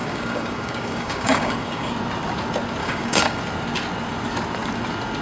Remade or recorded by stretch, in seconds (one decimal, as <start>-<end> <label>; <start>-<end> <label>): 0.0-1.9 remade; 1.9-2.8 recorded; 2.8-3.4 remade; 3.4-5.2 recorded